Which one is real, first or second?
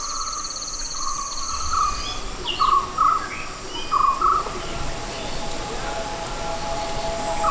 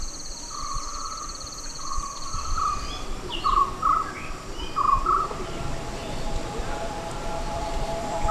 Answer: first